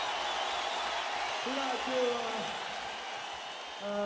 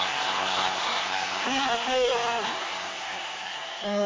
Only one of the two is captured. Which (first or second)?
first